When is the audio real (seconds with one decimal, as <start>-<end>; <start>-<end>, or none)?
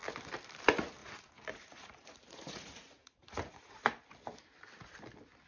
0.0-1.0; 3.7-5.5